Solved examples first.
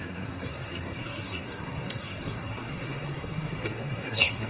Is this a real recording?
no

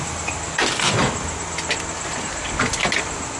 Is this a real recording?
yes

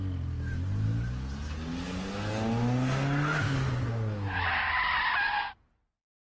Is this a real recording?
yes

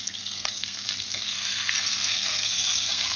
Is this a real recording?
no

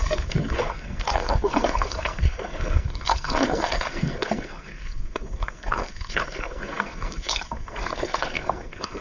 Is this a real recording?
no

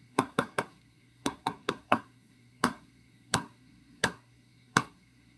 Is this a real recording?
no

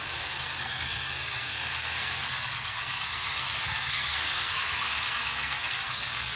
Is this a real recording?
no